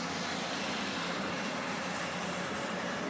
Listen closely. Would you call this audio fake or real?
real